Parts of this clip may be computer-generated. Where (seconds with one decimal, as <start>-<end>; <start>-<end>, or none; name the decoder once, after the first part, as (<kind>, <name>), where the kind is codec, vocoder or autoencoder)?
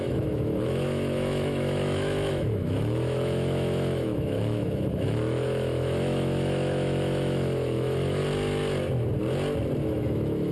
0.0-8.2 (autoencoder, DAC-VAE); 9.8-10.5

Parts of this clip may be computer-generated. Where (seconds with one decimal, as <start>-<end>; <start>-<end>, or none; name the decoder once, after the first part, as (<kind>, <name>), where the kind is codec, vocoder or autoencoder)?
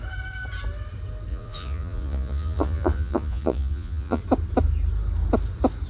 1.3-4.2 (vocoder, Vocos)